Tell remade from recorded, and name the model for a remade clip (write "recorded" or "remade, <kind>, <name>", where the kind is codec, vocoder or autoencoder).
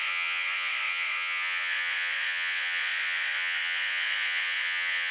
remade, vocoder, Vocos